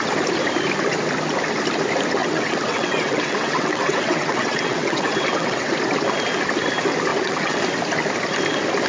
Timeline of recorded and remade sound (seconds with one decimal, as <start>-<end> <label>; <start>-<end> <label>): 0.0-2.2 recorded; 2.2-5.7 remade; 5.7-7.1 recorded; 7.1-7.6 remade; 7.6-8.9 recorded